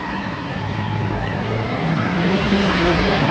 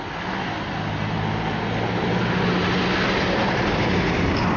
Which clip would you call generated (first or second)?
first